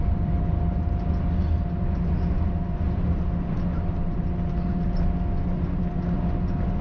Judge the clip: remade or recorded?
recorded